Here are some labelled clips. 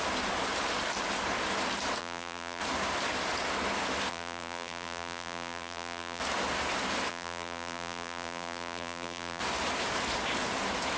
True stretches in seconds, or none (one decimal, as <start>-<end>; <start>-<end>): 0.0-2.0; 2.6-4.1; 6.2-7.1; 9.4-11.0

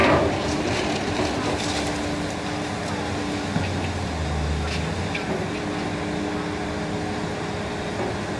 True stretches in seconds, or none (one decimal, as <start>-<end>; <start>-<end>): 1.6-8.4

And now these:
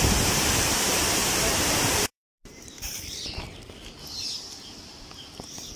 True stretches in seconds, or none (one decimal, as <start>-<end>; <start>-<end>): 0.0-1.2; 3.0-5.8

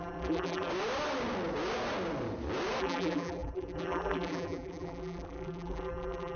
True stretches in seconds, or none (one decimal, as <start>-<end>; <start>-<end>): 0.7-2.8

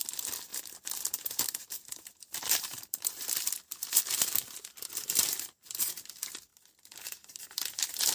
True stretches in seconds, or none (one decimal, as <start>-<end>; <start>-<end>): 0.0-8.1

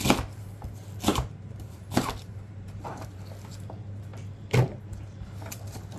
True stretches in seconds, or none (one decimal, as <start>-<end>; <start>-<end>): 0.0-1.1; 3.3-6.0